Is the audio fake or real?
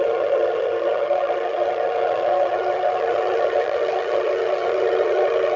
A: fake